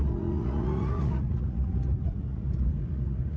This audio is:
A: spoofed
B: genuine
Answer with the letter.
A